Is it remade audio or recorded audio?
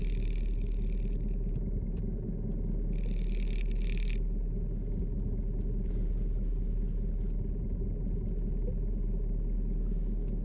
recorded